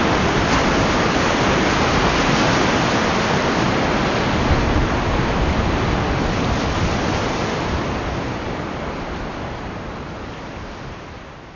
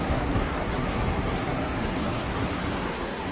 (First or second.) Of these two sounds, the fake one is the second